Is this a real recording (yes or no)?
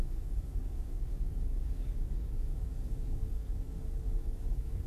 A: no